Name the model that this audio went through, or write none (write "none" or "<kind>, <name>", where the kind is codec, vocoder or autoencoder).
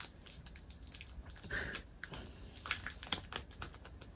none